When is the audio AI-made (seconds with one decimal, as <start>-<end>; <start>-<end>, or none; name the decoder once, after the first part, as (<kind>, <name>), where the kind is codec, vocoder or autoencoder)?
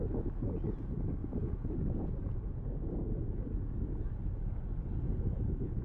1.2-4.6 (vocoder, Vocos); 5.1-5.8